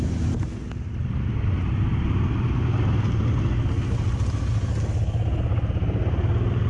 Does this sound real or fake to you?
real